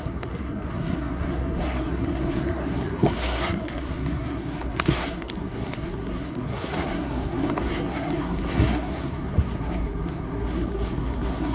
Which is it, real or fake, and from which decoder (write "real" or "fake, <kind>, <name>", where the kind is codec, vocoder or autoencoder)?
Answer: fake, codec, SNAC